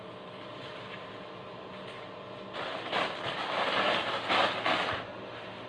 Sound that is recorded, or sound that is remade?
recorded